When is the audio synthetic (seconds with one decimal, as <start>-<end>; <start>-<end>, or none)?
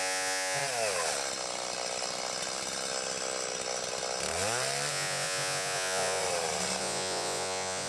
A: 0.0-0.6; 4.9-6.2; 6.8-7.9